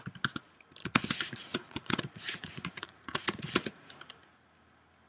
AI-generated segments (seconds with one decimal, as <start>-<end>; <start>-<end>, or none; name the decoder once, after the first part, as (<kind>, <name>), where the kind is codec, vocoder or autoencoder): 0.8-3.9 (vocoder, Vocos)